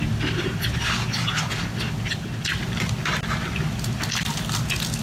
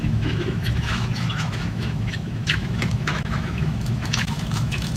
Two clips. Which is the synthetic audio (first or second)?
second